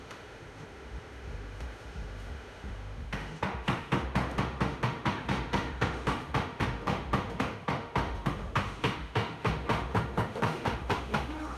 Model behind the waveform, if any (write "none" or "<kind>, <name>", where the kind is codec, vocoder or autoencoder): autoencoder, DAC-VAE